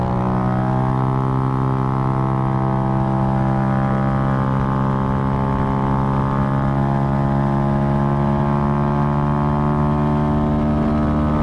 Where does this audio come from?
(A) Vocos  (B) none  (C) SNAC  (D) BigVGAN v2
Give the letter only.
B